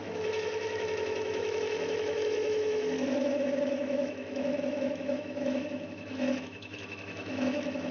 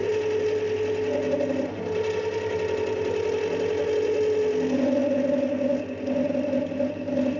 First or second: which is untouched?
second